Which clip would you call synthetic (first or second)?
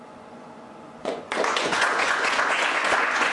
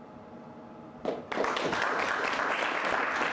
first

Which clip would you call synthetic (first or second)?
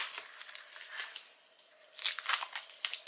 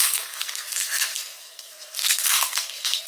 second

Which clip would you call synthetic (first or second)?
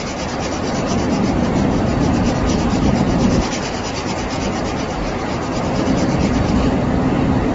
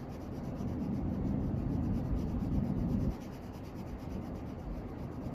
first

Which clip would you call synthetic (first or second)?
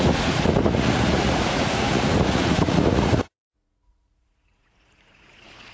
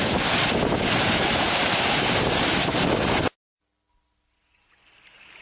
first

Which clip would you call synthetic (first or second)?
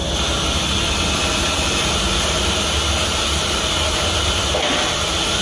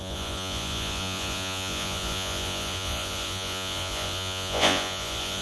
second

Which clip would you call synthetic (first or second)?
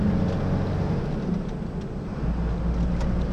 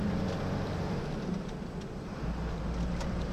second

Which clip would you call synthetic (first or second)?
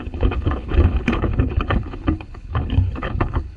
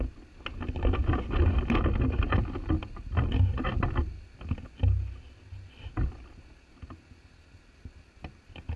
first